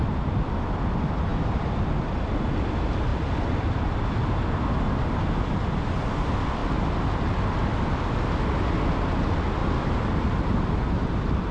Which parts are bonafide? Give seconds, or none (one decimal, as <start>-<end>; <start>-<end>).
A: 0.0-1.3; 1.8-3.1; 4.0-9.6; 10.1-11.5